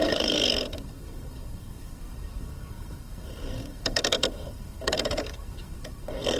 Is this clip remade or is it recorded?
remade